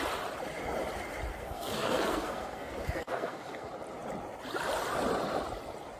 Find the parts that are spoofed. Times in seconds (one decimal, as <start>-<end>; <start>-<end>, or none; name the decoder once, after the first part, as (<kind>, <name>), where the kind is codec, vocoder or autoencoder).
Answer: 1.3-3.7 (codec, SNAC)